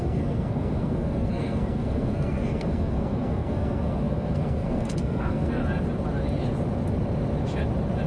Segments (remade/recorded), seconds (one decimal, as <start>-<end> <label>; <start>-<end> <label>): 0.0-5.6 remade; 5.6-8.1 recorded